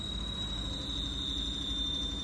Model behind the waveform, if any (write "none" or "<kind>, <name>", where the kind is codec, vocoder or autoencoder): none